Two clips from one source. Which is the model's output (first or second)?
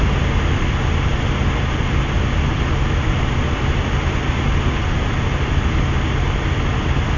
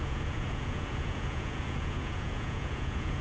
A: second